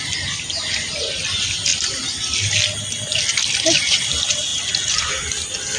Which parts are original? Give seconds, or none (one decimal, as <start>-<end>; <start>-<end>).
0.0-4.5; 5.1-5.8